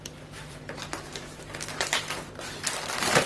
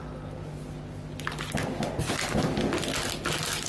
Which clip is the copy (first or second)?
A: first